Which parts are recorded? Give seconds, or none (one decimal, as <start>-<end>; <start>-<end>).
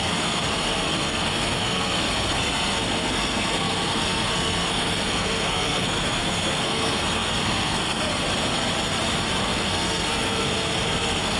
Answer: 8.1-9.4